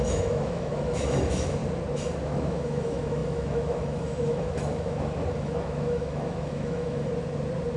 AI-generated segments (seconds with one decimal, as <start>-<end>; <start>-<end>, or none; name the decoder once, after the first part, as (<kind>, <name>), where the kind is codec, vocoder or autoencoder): 0.0-1.6 (autoencoder, DAC-VAE); 2.2-7.1